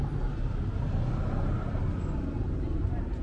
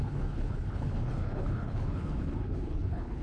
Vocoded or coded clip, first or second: second